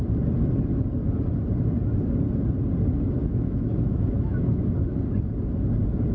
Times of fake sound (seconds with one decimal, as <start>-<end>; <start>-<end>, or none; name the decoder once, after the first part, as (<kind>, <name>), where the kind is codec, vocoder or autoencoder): 3.2-4.7 (autoencoder, DAC-VAE)